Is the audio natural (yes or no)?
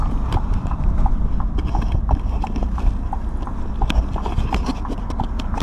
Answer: yes